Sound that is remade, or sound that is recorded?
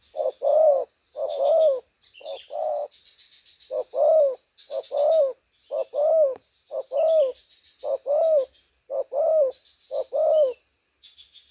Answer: recorded